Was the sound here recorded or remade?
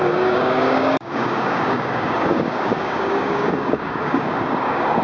remade